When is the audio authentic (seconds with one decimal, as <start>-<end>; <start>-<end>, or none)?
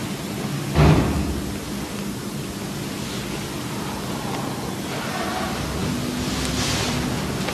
0.0-7.5